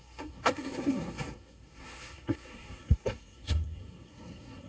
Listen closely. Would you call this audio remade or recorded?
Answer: remade